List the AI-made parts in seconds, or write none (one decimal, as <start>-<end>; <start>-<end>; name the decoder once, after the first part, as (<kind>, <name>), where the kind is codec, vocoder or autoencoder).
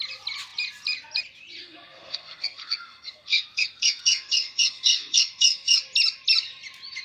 1.6-5.8 (codec, SNAC)